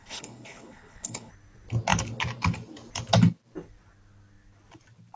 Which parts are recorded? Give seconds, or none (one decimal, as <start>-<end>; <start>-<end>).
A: 1.3-5.2

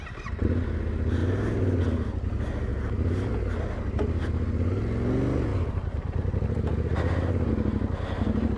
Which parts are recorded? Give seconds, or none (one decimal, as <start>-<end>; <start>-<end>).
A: 0.0-2.7; 3.3-5.5; 7.5-8.6

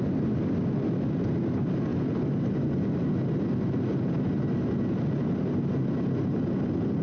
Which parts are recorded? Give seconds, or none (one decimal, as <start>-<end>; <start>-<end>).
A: 0.0-7.0

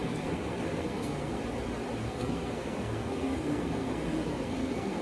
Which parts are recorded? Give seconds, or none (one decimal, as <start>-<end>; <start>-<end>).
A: 1.4-2.0

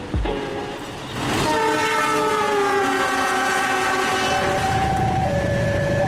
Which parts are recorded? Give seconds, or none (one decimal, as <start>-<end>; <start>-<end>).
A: 0.5-2.3; 4.1-4.7

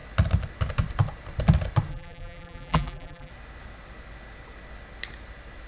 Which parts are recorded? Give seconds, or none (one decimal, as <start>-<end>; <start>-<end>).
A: 0.0-1.9; 3.3-5.7

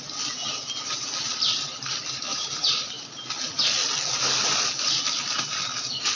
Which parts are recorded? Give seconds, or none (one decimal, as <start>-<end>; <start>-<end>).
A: 0.0-2.3; 3.3-6.2